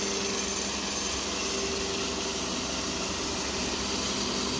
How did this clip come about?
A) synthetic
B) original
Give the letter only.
B